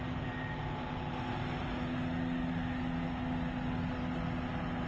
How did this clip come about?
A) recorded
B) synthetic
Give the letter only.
A